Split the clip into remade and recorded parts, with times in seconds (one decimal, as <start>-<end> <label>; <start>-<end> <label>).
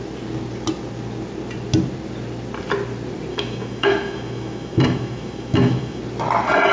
0.0-3.3 recorded; 3.3-6.0 remade; 6.0-6.7 recorded